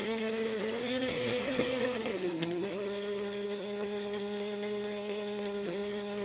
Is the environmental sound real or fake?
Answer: fake